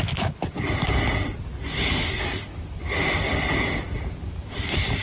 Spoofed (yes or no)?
no